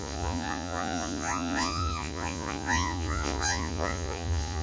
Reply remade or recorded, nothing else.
remade